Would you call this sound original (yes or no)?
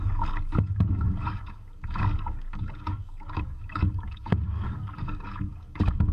no